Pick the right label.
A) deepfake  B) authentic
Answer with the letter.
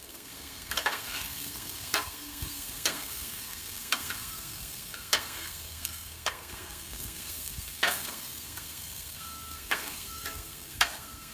A